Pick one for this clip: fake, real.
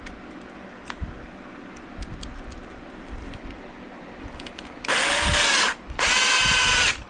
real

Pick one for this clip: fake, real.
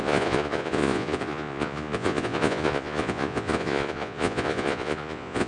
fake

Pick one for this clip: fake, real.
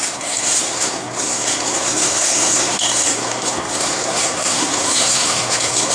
fake